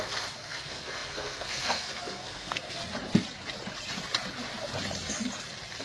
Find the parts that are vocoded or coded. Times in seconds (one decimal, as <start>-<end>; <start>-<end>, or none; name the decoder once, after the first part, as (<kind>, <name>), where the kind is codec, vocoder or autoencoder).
0.0-2.8 (codec, SNAC)